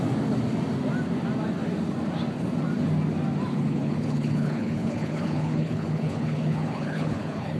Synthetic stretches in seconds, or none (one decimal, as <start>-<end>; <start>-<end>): 3.5-7.6